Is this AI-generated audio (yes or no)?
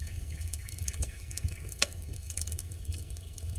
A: yes